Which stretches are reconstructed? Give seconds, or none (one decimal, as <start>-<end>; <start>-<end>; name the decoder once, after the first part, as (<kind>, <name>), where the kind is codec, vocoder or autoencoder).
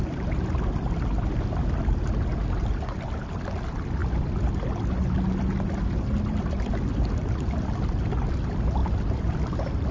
none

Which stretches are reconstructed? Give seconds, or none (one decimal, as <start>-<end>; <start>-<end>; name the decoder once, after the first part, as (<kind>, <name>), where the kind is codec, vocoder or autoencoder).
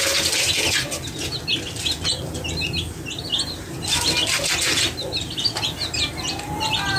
none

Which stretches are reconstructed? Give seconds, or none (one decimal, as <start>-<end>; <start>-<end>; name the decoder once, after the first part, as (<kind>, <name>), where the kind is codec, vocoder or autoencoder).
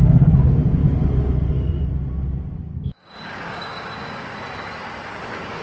0.0-0.8 (codec, DAC); 2.7-4.3; 5.1-5.6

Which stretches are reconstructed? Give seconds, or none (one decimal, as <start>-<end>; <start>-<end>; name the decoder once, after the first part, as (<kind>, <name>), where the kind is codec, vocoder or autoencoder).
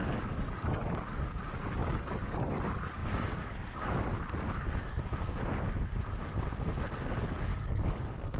0.0-1.2 (codec, DAC); 1.8-2.5; 7.5-8.4